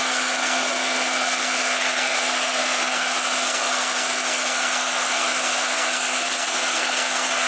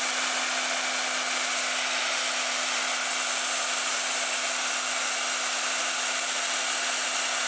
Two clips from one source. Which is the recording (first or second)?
second